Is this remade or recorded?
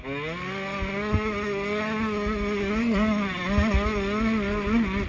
recorded